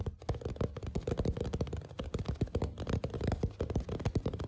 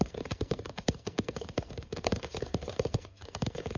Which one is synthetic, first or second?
second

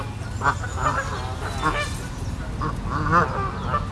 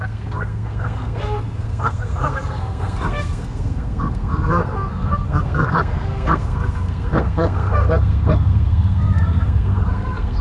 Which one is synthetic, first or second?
second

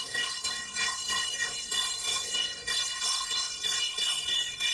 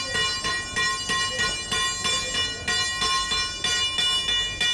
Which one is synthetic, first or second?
first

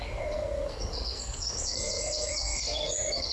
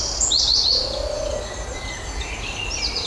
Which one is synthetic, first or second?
first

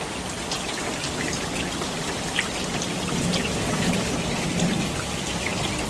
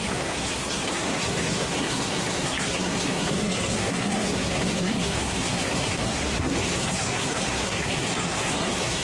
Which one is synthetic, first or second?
second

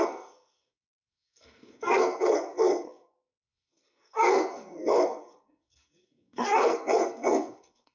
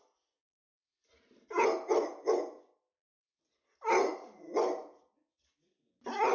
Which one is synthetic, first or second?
first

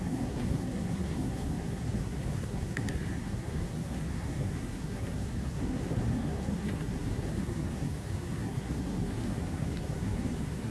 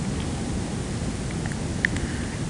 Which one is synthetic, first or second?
first